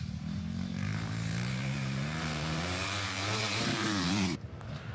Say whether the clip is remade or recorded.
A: remade